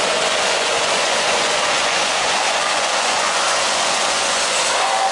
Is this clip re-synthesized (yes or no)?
yes